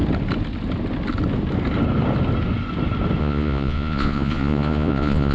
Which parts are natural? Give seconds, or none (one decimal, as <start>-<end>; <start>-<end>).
0.0-3.2